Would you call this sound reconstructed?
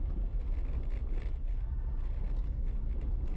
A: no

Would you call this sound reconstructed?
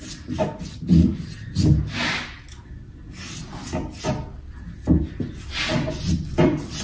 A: no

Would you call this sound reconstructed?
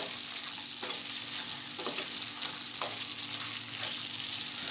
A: no